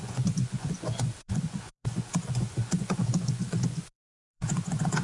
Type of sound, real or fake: fake